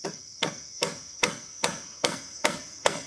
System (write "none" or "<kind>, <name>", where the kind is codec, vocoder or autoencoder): codec, SNAC